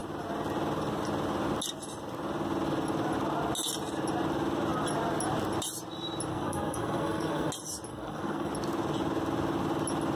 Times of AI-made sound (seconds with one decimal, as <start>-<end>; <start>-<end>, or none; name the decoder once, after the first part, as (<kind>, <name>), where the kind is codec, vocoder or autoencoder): 6.3-7.5 (codec, SNAC); 7.9-8.5